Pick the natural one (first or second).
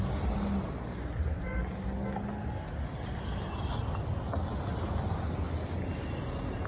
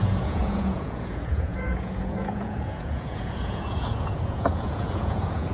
first